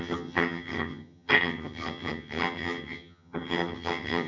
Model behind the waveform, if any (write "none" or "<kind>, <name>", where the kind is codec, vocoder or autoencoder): vocoder, HiFi-GAN